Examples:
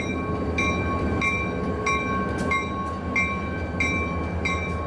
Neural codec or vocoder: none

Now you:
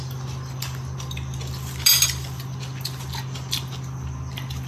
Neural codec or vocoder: none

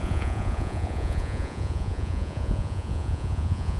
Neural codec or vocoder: vocoder, Vocos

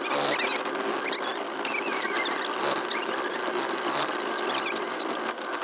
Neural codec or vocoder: none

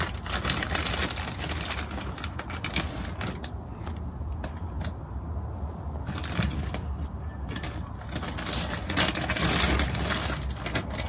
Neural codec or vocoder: none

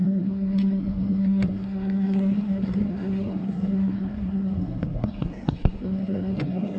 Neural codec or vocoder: codec, SNAC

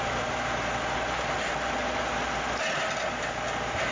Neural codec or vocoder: none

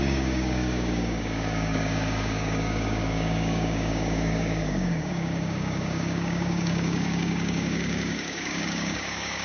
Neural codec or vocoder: codec, DAC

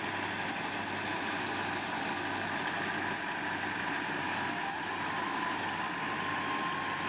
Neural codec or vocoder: none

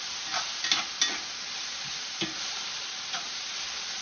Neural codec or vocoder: none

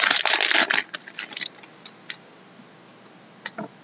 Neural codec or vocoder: none